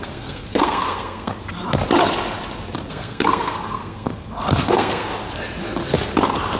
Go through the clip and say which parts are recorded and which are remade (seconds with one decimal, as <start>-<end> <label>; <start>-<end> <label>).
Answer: 0.0-1.4 remade; 1.4-2.9 recorded; 2.9-5.1 remade; 5.1-6.6 recorded